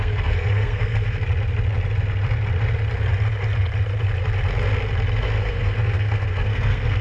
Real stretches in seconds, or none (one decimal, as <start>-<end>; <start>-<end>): 1.2-5.4